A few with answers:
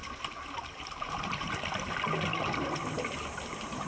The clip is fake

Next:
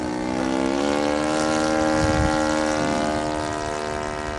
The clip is real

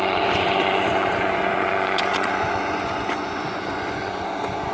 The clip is fake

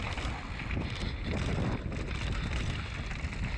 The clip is real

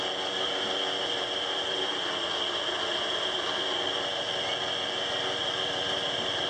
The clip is real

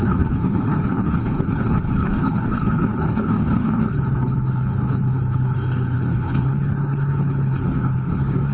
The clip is fake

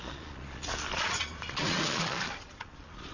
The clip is fake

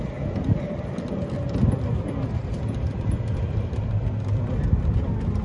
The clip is real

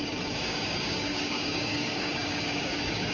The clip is fake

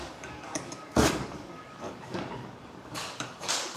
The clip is fake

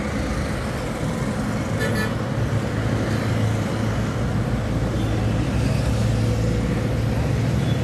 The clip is real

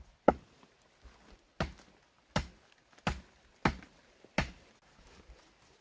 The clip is real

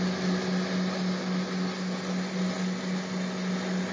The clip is real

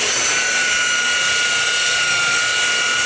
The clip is real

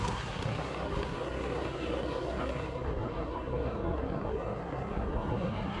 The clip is fake